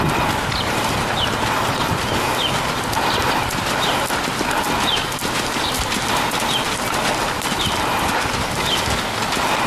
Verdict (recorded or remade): recorded